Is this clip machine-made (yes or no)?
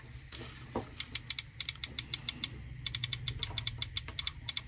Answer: no